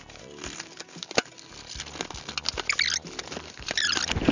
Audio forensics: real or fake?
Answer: real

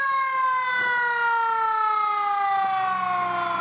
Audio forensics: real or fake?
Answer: real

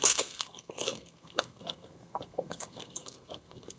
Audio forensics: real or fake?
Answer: fake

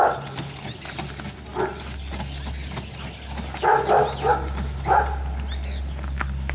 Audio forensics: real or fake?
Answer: real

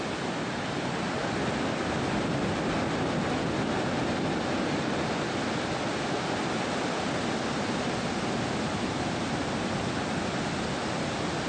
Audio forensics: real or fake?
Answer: real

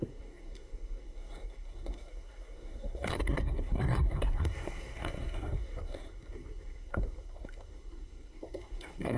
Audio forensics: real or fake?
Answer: fake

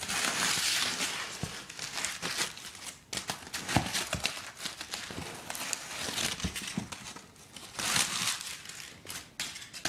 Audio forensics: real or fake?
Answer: real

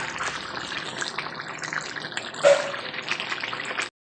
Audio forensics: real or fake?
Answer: real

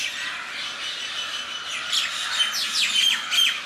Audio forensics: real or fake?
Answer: real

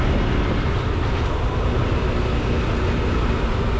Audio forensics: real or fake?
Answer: real